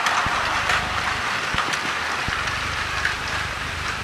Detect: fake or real real